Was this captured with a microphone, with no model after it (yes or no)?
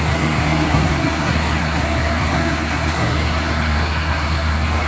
no